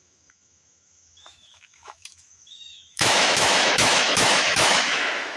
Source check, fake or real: fake